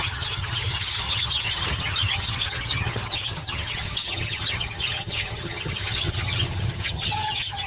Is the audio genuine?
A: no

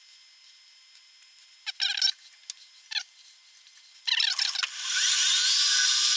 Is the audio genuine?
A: yes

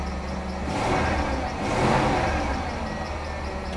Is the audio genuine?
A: yes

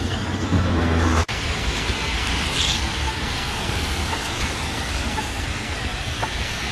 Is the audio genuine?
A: no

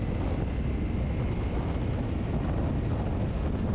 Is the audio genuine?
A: yes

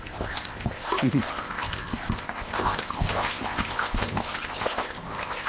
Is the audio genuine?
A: no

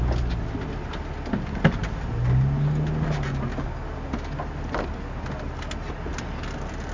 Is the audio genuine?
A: yes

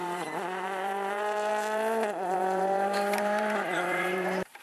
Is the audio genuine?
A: no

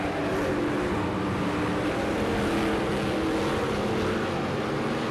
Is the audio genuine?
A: yes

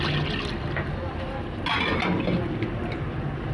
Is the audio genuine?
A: yes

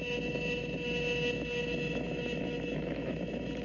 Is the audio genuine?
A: no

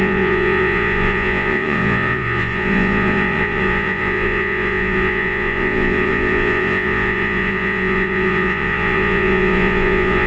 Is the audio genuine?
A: no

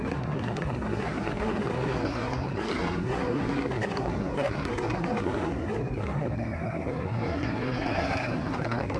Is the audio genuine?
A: no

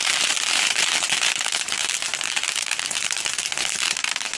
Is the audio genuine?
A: no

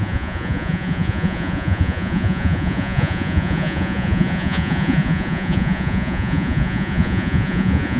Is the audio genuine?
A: no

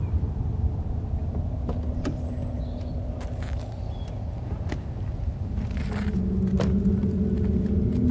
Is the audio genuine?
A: yes